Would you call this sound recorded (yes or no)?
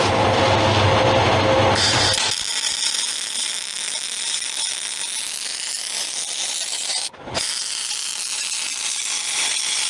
yes